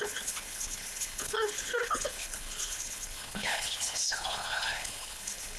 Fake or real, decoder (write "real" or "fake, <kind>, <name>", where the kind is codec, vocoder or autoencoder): fake, codec, HILCodec